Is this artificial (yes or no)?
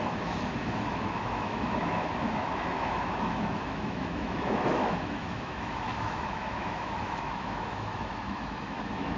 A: yes